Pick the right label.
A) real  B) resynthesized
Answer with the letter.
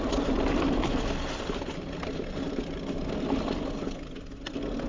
A